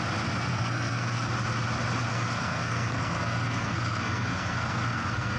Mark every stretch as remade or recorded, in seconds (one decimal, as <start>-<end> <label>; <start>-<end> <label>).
0.0-0.5 recorded; 0.5-1.3 remade; 1.3-2.1 recorded; 2.1-5.4 remade